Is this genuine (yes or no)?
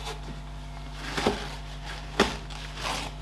yes